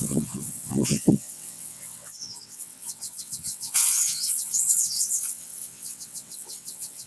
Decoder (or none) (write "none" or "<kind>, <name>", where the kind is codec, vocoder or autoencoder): vocoder, WaveNeXt